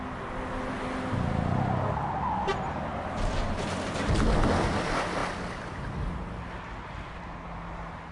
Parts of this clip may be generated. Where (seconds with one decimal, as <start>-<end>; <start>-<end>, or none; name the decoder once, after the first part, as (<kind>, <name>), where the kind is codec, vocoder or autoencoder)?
none

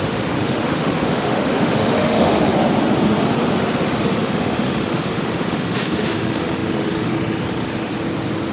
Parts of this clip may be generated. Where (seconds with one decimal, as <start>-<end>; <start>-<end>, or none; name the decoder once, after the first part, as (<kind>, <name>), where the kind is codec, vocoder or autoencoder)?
0.0-2.5 (autoencoder, DAC-VAE); 4.2-7.9

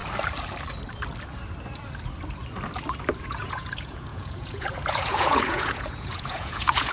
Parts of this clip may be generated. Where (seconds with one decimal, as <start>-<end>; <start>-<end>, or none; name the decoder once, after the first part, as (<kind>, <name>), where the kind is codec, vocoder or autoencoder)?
3.2-6.9 (vocoder, Vocos)